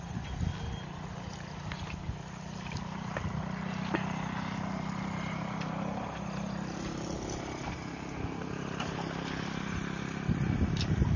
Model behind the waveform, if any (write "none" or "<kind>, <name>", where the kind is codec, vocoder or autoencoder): none